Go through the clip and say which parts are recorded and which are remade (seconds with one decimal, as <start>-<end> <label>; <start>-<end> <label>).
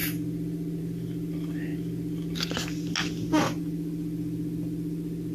0.0-5.3 recorded